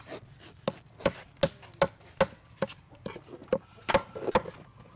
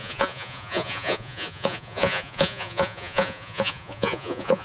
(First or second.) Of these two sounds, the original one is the first